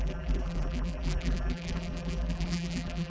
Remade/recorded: remade